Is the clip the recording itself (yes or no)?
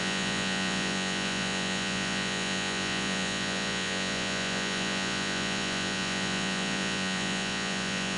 no